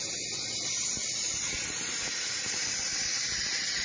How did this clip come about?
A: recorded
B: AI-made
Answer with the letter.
A